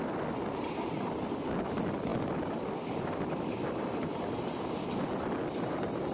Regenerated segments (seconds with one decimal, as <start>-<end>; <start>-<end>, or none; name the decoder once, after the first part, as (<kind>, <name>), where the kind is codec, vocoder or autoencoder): none